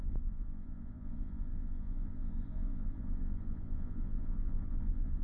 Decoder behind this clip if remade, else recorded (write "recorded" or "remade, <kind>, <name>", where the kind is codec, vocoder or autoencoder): remade, vocoder, Vocos